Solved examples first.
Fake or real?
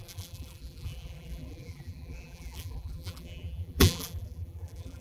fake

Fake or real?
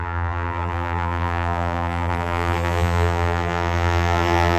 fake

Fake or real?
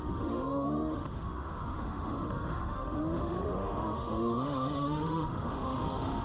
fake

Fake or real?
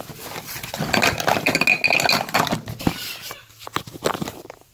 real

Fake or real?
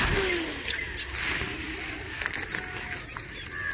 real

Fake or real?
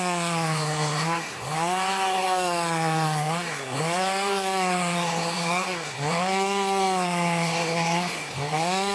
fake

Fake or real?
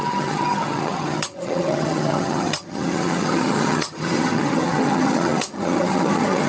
fake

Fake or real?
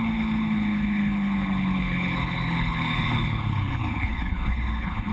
fake